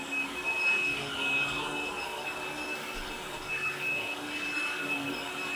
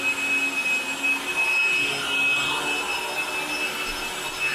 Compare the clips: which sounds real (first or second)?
second